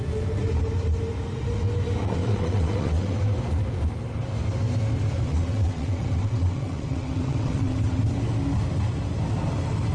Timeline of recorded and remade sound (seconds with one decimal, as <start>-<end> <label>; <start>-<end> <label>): 0.0-2.0 recorded; 2.0-3.2 remade; 3.2-5.3 recorded; 5.3-8.0 remade; 8.0-9.9 recorded